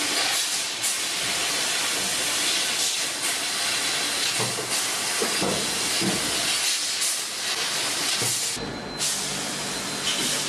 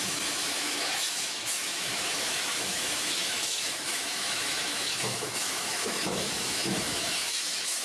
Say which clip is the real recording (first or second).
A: first